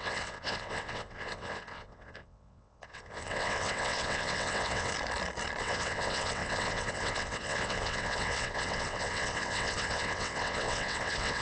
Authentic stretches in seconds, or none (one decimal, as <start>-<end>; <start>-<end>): 4.9-5.6